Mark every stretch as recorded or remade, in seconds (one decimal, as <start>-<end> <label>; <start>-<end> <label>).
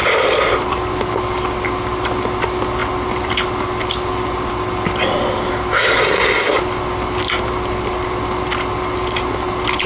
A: 0.0-1.0 remade; 1.0-2.8 recorded; 2.8-5.5 remade; 5.5-9.9 recorded